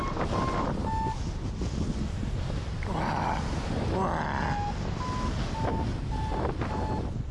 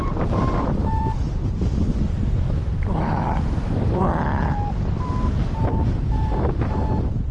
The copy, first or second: second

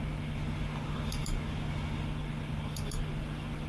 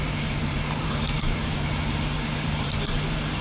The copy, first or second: second